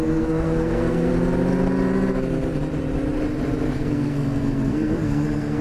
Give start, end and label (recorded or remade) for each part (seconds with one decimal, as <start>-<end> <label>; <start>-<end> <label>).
0.0-1.1 remade; 1.1-3.7 recorded; 3.7-5.6 remade